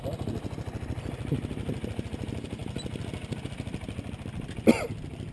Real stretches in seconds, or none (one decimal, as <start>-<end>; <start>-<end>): 0.0-5.3